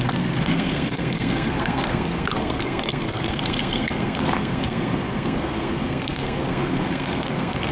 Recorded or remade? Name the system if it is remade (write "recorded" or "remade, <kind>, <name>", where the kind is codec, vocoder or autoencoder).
remade, codec, SNAC